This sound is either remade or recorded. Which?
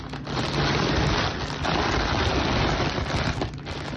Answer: recorded